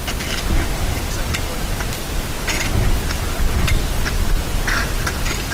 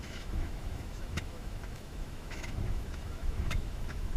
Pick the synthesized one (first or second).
second